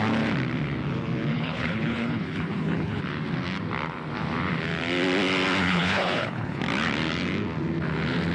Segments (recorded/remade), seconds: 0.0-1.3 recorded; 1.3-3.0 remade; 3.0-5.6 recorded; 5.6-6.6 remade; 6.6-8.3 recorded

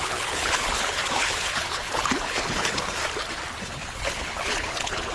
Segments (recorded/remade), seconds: 0.0-3.0 remade; 3.0-3.6 recorded; 3.6-5.1 remade

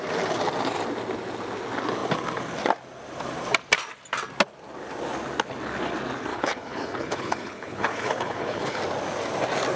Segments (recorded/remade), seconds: 0.0-6.3 recorded; 6.3-8.8 remade; 8.8-9.8 recorded

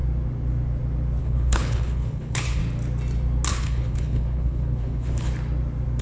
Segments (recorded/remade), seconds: 0.0-1.2 recorded; 1.2-2.6 remade; 2.6-3.5 recorded; 3.5-5.3 remade; 5.3-6.0 recorded

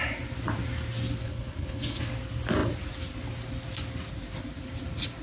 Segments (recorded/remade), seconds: 0.0-1.2 recorded; 1.2-2.1 remade; 2.1-5.2 recorded